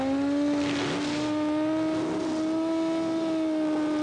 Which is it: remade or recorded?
recorded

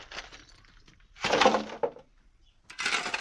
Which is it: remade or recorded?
recorded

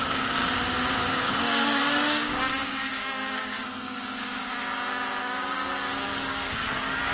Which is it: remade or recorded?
remade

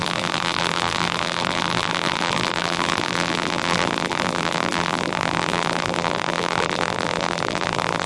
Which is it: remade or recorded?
remade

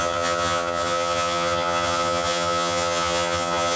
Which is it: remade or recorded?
remade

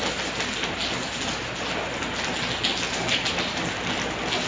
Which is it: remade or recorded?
recorded